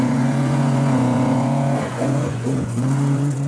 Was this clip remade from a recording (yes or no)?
yes